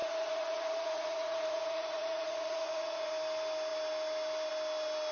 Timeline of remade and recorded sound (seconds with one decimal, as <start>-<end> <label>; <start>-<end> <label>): 0.0-3.1 remade; 3.1-5.1 recorded